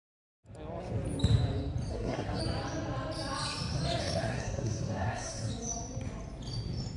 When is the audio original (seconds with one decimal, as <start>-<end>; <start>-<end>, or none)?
0.0-1.9; 2.4-4.0; 5.5-7.0